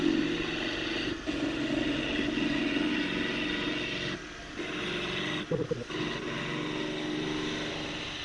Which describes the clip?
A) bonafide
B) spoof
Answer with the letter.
A